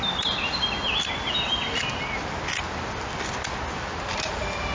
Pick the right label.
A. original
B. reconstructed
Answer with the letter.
A